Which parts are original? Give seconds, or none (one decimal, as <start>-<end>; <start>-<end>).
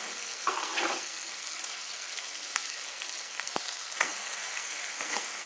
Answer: none